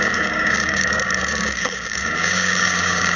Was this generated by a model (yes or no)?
yes